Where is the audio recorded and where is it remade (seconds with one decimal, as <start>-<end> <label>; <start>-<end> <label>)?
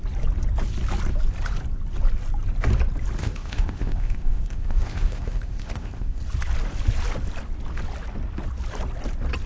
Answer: 0.0-3.2 recorded; 3.2-6.2 remade; 6.2-9.5 recorded